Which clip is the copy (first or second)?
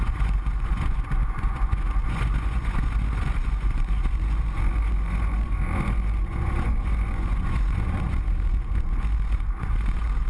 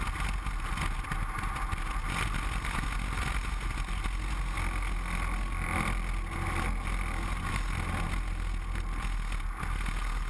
first